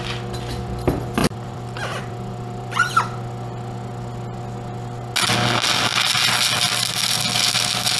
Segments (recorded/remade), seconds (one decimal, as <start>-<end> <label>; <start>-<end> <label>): 0.0-1.2 recorded; 1.2-2.9 remade; 2.9-8.0 recorded